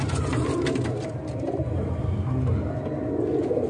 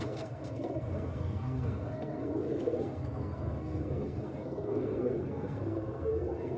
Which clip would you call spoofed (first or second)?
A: second